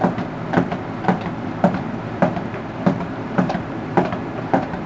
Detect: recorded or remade remade